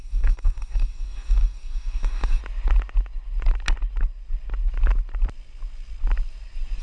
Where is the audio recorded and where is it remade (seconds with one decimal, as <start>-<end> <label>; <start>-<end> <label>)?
0.0-2.4 remade; 2.4-6.8 recorded